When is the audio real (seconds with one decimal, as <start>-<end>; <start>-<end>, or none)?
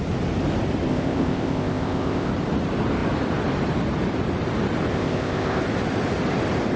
0.0-0.9; 2.3-4.9; 5.6-6.8